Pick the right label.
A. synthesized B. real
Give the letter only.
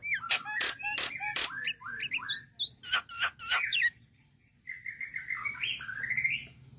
B